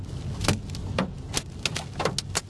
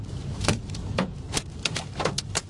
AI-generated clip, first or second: second